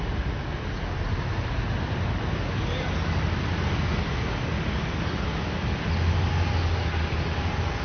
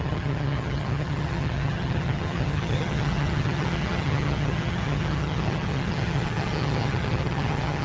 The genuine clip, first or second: first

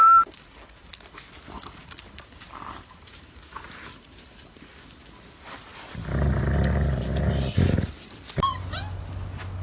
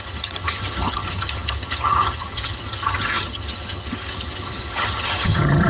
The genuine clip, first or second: first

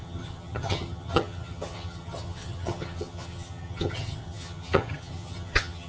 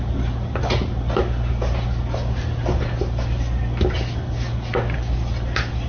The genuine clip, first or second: second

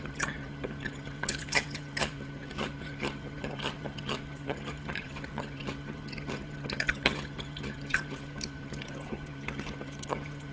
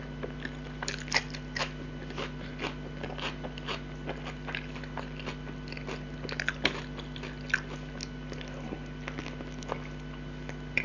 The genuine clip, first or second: second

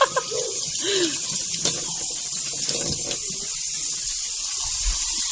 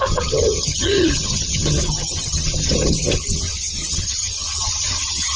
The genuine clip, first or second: first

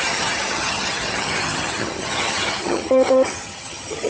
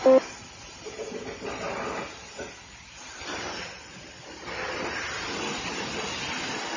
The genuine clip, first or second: second